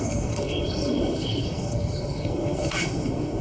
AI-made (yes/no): yes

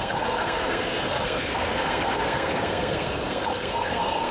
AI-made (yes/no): yes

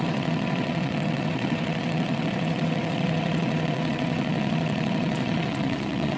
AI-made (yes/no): yes